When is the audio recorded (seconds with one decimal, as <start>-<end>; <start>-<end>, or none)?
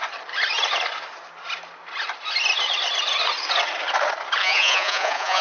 0.0-4.4